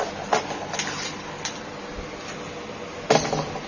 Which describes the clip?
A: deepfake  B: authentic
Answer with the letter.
B